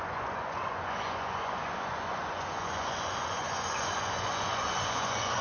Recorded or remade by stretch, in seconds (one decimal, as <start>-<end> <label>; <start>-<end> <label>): 0.0-5.4 remade